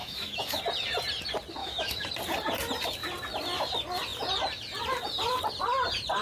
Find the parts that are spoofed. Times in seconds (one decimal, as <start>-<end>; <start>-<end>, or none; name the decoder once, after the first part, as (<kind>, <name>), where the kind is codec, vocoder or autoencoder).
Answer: 0.0-0.6 (autoencoder, DAC-VAE); 1.6-2.1